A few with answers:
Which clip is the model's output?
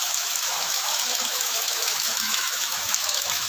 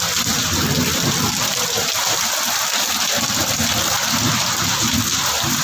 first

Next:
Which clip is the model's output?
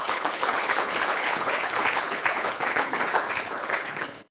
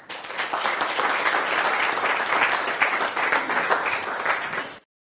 first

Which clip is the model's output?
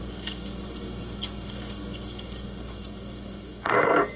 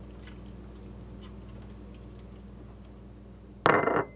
first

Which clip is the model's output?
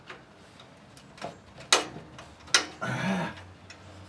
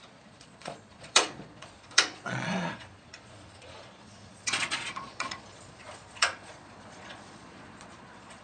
second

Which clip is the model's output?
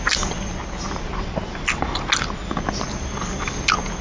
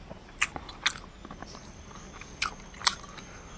second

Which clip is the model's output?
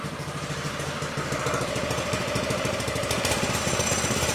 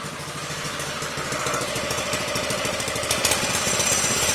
first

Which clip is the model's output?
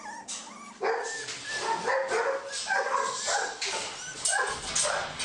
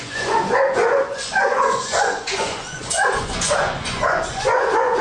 second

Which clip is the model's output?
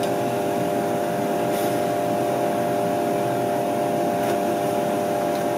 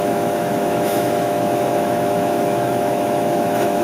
second